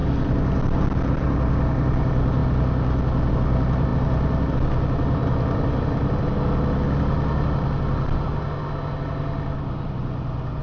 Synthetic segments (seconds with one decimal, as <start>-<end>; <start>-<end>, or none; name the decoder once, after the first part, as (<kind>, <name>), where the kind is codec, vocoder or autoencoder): none